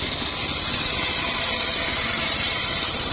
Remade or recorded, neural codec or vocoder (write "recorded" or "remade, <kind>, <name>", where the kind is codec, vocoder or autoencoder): recorded